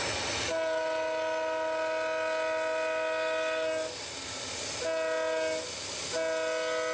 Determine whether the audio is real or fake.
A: real